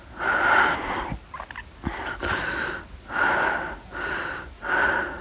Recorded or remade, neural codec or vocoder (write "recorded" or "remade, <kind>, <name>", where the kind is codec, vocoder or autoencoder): recorded